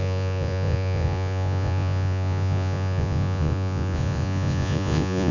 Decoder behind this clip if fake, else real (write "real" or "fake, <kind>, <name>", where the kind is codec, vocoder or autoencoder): fake, vocoder, Vocos